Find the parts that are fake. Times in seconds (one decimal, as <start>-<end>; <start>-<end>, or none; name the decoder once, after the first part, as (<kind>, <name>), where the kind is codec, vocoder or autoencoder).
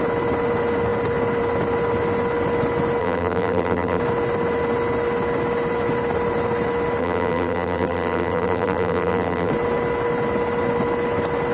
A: 3.0-4.0 (vocoder, BigVGAN v2); 7.0-9.5